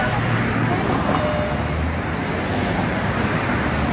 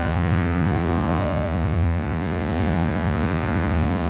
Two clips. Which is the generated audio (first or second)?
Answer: second